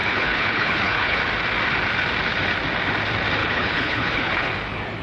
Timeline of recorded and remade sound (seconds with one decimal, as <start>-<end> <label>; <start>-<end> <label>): 0.0-1.2 remade; 1.2-3.4 recorded; 3.4-4.5 remade; 4.5-5.0 recorded